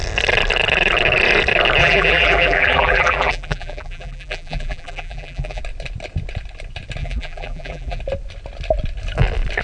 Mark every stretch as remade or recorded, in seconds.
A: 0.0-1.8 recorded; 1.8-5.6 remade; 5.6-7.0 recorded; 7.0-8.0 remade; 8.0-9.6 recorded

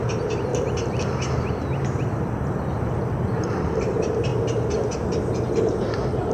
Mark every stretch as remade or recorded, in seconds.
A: 0.0-0.5 remade; 0.5-3.6 recorded; 3.6-4.3 remade; 4.3-5.6 recorded; 5.6-6.3 remade

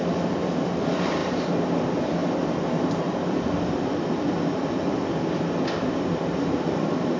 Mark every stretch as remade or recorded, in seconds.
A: 0.0-1.2 recorded; 1.2-1.8 remade; 1.8-2.2 recorded; 2.2-6.0 remade; 6.0-7.2 recorded